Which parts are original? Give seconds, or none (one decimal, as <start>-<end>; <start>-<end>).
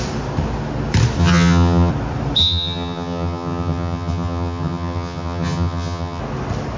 0.0-1.2; 1.9-2.4; 6.2-6.8